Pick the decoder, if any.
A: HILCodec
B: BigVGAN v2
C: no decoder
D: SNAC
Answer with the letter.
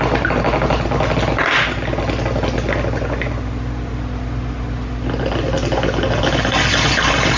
C